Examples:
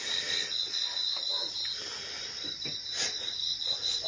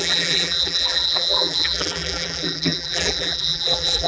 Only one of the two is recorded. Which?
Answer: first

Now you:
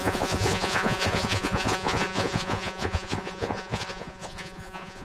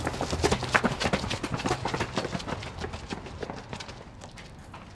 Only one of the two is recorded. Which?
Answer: second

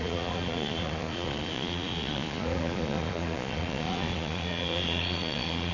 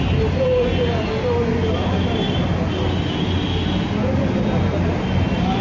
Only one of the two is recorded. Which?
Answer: second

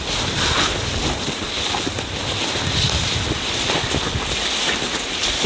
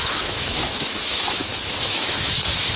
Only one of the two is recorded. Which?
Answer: first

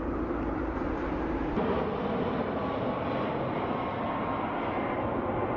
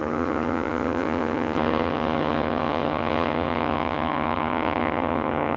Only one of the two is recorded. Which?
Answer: first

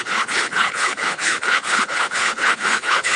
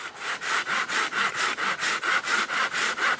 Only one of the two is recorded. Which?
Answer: second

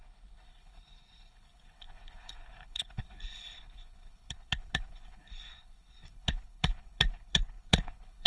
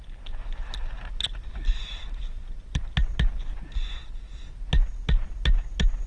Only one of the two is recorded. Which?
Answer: second